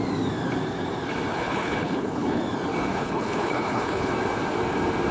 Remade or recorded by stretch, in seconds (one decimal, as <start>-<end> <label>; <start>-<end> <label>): 0.0-1.3 recorded; 1.3-2.4 remade; 2.4-2.9 recorded; 2.9-4.1 remade; 4.1-5.1 recorded